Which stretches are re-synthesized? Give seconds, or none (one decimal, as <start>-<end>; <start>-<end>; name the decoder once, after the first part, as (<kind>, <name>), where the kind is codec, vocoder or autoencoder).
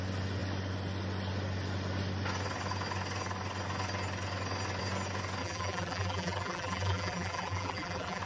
5.4-8.2 (vocoder, BigVGAN v2)